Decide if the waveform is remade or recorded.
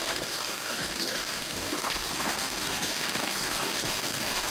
remade